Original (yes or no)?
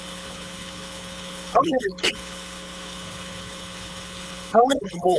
no